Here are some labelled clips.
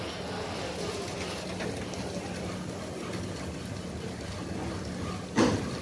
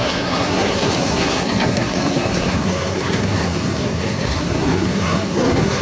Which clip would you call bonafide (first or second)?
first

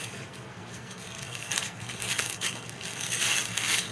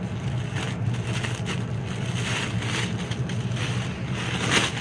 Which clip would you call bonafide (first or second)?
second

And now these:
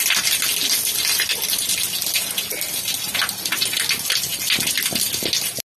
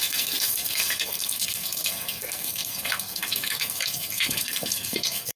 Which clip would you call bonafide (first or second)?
first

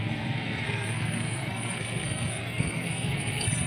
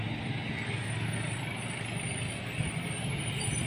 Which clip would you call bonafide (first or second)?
second